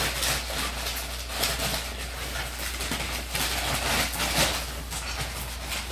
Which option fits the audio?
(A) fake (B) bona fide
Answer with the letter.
B